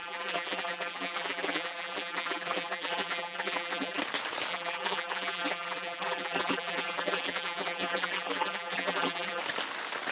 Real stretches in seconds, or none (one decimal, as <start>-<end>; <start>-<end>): 4.0-4.5; 9.4-10.1